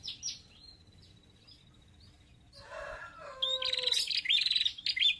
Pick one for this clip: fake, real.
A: real